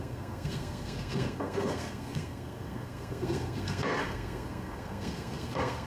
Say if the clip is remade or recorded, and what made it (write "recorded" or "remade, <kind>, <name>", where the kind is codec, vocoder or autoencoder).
remade, codec, SNAC